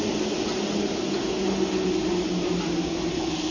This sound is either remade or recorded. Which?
recorded